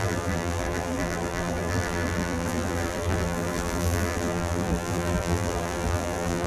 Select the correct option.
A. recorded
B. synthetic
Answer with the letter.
B